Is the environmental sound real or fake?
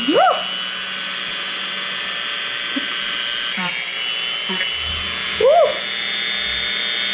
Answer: real